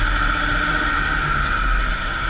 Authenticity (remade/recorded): recorded